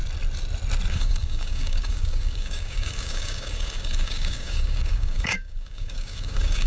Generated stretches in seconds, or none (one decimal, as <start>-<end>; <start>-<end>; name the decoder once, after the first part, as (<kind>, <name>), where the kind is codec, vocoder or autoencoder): 0.9-6.7 (codec, DAC)